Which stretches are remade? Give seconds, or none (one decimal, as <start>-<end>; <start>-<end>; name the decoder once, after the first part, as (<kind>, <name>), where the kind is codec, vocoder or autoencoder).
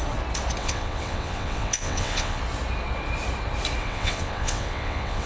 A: 0.6-2.4 (vocoder, WaveNeXt); 3.8-5.3